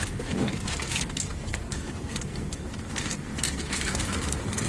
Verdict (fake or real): fake